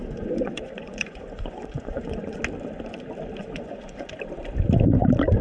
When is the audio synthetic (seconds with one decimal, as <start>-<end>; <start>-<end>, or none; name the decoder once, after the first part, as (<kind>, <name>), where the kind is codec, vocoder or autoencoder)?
0.0-2.4 (vocoder, Vocos); 3.4-4.1